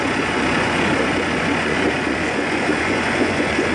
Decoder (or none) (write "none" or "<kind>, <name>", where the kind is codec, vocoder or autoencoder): vocoder, Vocos